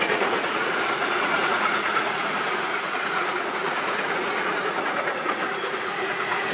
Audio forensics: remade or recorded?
remade